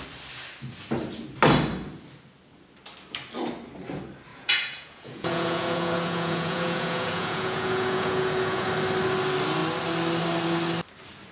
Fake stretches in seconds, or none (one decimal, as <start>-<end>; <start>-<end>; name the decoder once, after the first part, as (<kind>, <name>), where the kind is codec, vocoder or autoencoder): 4.3-8.7 (vocoder, Vocos)